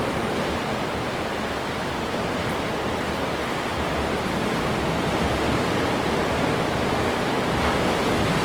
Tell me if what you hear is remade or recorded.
remade